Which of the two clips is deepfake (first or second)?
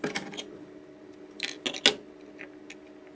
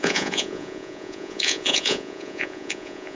second